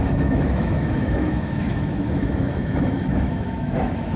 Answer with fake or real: fake